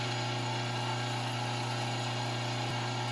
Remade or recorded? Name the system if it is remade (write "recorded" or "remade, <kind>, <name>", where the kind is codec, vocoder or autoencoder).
recorded